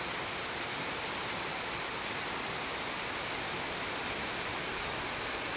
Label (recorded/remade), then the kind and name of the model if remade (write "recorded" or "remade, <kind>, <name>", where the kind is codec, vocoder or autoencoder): recorded